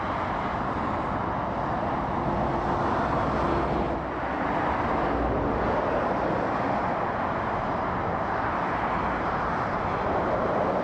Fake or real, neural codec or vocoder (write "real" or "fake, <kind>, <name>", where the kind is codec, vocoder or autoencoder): real